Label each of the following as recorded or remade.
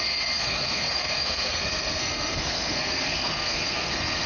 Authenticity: remade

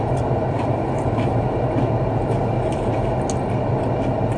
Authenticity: recorded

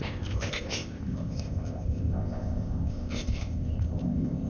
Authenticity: remade